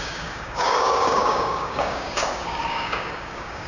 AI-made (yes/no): yes